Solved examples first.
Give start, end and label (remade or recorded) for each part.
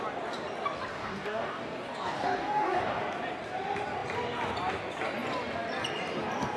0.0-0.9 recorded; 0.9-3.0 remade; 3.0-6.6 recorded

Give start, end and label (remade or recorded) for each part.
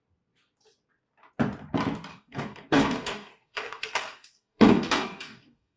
0.0-2.1 recorded; 2.1-5.8 remade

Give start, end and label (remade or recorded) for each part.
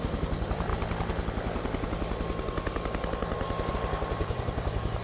0.0-0.7 remade; 0.7-3.7 recorded; 3.7-5.0 remade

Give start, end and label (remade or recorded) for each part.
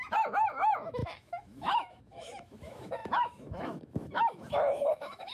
0.0-5.3 remade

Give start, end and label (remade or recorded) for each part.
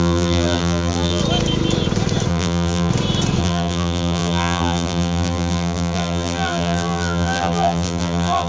0.0-1.2 remade; 1.2-2.3 recorded; 2.3-2.9 remade; 2.9-3.4 recorded; 3.4-8.5 remade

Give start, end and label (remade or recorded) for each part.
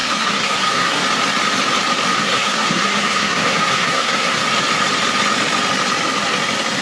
0.0-1.0 remade; 1.0-2.1 recorded; 2.1-4.4 remade; 4.4-6.8 recorded